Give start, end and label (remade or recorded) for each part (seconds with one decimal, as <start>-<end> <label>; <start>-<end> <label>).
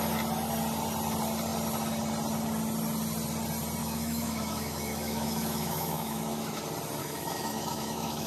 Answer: 0.0-3.8 recorded; 3.8-6.6 remade; 6.6-7.0 recorded; 7.0-8.3 remade